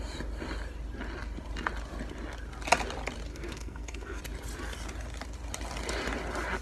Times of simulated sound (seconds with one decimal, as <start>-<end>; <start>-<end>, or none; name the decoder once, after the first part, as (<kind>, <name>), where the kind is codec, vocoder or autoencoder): 3.3-4.2 (codec, SNAC)